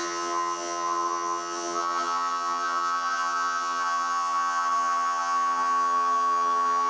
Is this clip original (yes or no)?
no